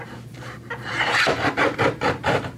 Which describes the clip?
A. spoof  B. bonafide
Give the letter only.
A